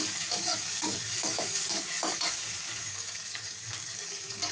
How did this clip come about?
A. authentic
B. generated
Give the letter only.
B